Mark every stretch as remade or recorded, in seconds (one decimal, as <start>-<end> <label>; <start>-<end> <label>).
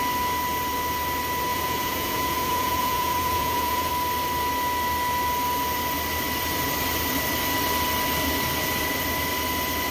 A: 0.0-1.5 recorded; 1.5-3.9 remade; 3.9-9.9 recorded